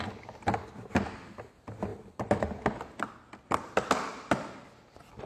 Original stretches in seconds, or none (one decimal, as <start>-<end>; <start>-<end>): 0.0-5.3